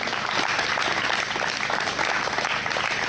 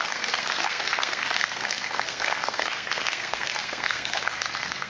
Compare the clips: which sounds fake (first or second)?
second